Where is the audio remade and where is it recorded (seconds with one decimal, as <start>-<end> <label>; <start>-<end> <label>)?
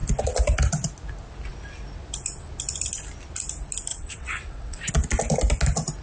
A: 0.0-3.9 recorded; 3.9-4.9 remade; 4.9-6.0 recorded